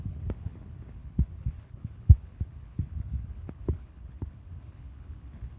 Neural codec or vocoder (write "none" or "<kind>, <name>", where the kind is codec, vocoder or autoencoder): codec, HILCodec